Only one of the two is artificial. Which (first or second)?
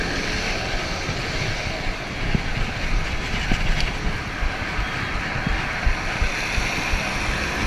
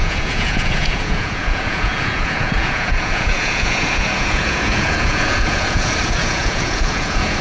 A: second